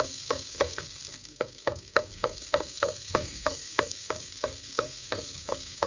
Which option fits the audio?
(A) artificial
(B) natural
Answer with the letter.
A